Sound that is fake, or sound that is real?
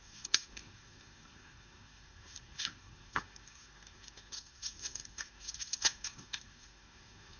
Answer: fake